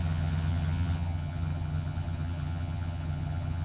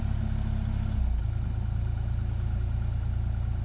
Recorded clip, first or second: second